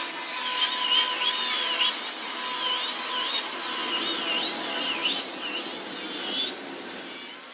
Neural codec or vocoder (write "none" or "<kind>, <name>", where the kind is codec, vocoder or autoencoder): none